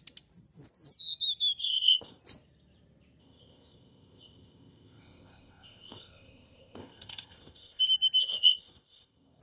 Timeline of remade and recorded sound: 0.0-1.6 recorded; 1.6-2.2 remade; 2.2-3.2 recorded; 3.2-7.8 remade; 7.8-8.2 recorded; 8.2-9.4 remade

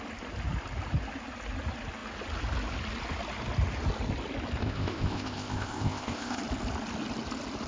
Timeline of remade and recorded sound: 0.0-4.6 recorded; 4.6-6.4 remade; 6.4-7.7 recorded

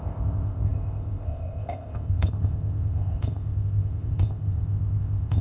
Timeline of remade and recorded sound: 0.0-5.4 remade

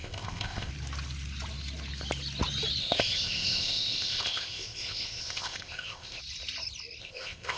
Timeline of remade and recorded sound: 0.0-0.7 remade; 0.7-2.8 recorded; 2.8-6.2 remade; 6.2-7.0 recorded; 7.0-7.6 remade

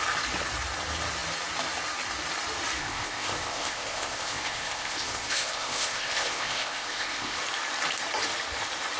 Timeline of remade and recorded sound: 0.0-2.8 recorded; 2.8-7.4 remade; 7.4-9.0 recorded

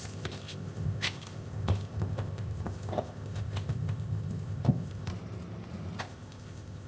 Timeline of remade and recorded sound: 0.0-5.1 remade; 5.1-6.0 recorded; 6.0-6.9 remade

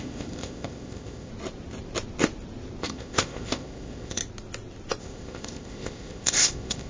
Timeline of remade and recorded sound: 0.0-1.3 remade; 1.3-2.8 recorded; 2.8-4.2 remade; 4.2-5.0 recorded; 5.0-6.9 remade

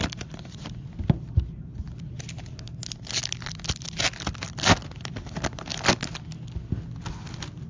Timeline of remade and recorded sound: 0.0-7.7 recorded